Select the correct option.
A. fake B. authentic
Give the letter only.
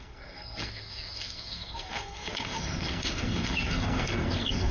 A